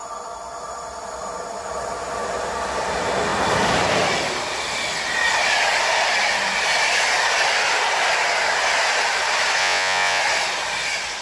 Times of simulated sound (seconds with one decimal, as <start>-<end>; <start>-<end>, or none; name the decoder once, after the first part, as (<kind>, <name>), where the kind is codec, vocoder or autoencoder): 9.6-10.2 (vocoder, Vocos)